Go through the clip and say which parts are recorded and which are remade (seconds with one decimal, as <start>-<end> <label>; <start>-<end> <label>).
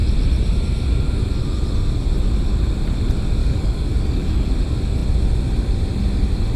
0.0-3.4 recorded; 3.4-4.5 remade; 4.5-6.6 recorded